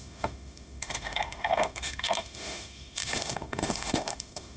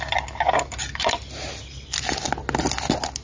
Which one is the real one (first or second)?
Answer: second